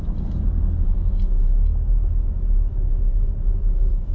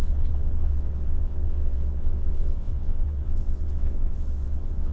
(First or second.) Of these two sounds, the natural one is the first